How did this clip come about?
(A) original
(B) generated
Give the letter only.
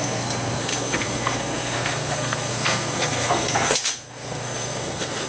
B